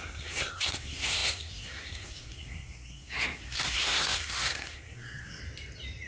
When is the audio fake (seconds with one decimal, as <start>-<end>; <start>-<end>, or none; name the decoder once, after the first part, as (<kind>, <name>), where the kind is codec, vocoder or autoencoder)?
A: 0.0-5.4 (codec, SNAC)